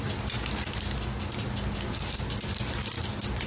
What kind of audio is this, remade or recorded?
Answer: recorded